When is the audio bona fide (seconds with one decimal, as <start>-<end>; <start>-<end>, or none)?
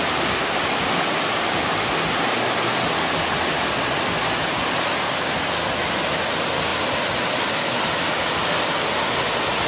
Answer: 0.0-9.7